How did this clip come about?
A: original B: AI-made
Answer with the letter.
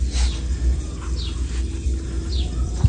A